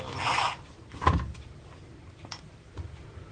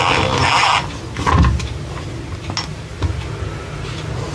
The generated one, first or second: first